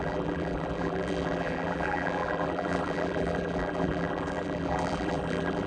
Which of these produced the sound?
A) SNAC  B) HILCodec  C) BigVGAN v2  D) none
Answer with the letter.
C